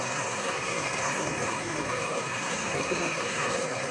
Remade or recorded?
remade